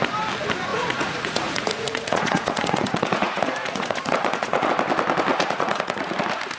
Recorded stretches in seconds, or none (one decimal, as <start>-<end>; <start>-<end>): 0.0-0.7; 4.7-5.3; 6.1-6.6